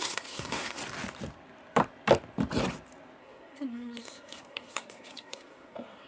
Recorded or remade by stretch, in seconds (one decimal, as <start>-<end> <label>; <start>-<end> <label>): 0.0-0.8 remade; 0.8-3.2 recorded; 3.2-6.1 remade